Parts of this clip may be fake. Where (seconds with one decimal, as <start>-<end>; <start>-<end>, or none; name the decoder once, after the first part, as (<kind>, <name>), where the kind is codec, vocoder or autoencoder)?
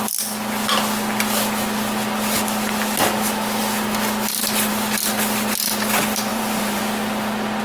6.3-6.8 (vocoder, BigVGAN v2)